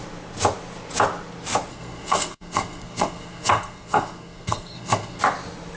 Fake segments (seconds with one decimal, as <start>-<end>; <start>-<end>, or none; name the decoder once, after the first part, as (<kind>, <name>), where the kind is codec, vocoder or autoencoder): 1.7-5.2 (codec, SNAC)